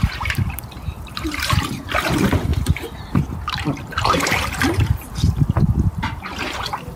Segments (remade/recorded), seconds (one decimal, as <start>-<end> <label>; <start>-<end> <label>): 0.0-2.5 remade; 2.5-3.0 recorded; 3.0-4.4 remade; 4.4-6.0 recorded; 6.0-7.0 remade